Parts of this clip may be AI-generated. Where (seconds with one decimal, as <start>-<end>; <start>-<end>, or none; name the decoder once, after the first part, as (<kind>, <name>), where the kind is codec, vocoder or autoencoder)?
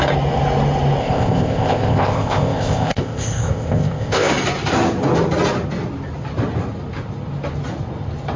1.0-4.3 (codec, ZipCodec)